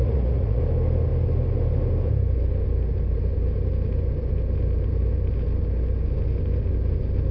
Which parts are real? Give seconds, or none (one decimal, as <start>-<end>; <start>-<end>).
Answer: 0.6-7.3